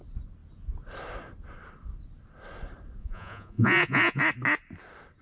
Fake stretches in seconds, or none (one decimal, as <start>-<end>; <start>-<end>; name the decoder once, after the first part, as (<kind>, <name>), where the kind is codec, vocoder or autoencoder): 3.0-4.2 (vocoder, Vocos)